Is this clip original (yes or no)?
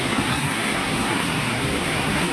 no